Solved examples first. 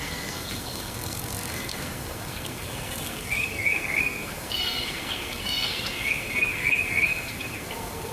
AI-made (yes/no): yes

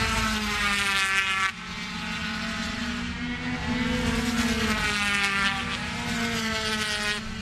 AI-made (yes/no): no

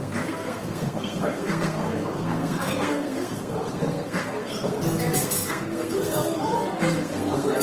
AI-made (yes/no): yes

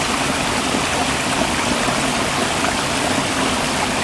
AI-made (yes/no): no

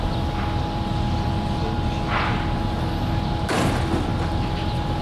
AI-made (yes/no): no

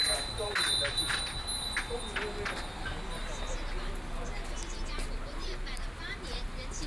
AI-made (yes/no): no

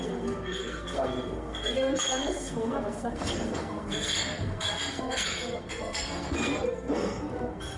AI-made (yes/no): yes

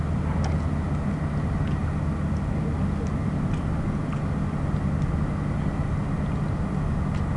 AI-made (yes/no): no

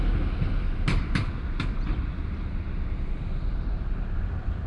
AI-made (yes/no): no